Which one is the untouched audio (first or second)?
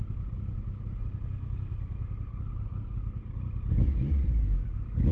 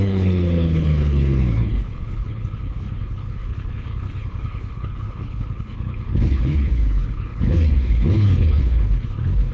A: first